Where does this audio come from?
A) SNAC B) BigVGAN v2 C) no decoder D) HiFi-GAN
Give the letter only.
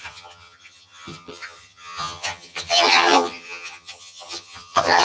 D